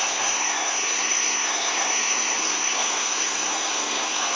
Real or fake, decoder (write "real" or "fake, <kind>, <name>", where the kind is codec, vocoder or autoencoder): fake, codec, SNAC